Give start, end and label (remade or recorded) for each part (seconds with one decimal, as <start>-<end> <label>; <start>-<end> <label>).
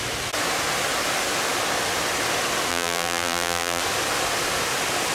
0.0-2.7 recorded; 2.7-3.8 remade; 3.8-5.1 recorded